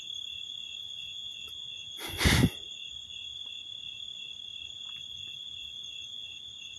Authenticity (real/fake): real